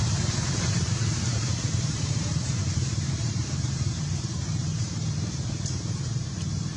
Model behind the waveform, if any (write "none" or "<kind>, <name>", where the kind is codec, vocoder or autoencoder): vocoder, BigVGAN v2